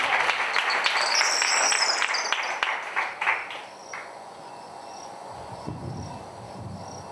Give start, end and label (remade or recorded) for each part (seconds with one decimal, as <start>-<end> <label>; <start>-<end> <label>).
0.0-3.8 recorded; 3.8-5.9 remade; 5.9-7.1 recorded